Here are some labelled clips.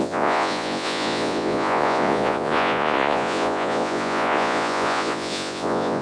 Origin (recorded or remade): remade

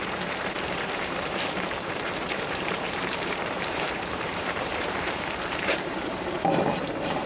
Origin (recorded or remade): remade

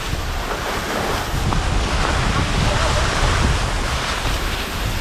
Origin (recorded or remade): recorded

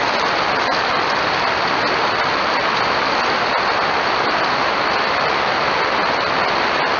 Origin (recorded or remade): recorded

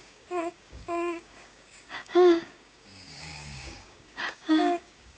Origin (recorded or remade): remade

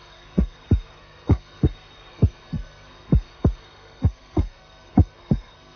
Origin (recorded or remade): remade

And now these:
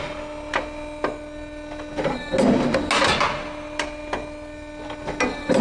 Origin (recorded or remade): recorded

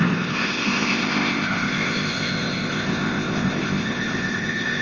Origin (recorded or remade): remade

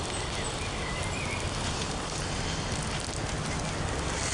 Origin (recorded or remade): recorded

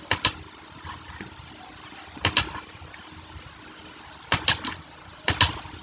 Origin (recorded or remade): recorded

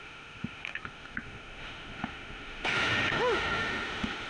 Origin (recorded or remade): remade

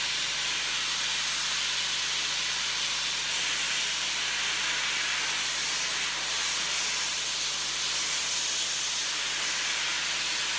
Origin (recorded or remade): recorded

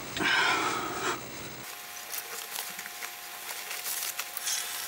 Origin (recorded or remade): recorded